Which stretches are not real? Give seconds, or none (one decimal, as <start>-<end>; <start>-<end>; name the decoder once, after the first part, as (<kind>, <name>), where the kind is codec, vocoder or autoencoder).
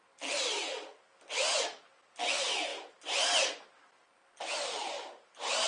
none